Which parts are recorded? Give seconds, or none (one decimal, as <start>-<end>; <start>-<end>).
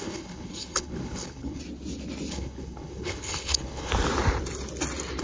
1.6-2.3; 3.9-5.2